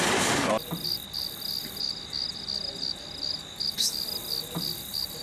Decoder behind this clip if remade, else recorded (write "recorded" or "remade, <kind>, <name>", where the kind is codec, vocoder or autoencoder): recorded